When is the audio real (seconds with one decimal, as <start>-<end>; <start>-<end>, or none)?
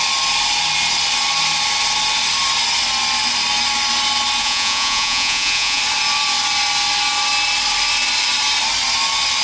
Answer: 0.0-4.4; 5.8-9.4